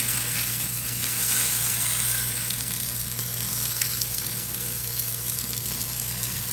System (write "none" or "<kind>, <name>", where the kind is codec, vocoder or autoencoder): codec, SNAC